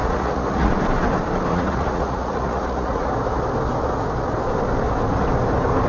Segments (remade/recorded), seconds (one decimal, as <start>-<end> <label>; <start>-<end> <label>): 0.0-0.7 remade; 0.7-1.5 recorded; 1.5-3.1 remade; 3.1-5.9 recorded